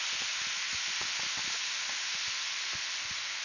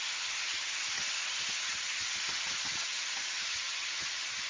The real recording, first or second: first